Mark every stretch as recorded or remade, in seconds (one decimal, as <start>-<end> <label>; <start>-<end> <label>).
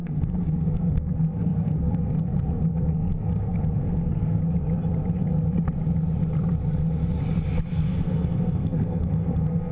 0.0-4.4 remade; 4.4-7.7 recorded; 7.7-9.7 remade